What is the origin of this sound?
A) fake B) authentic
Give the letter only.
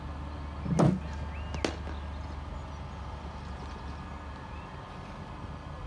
B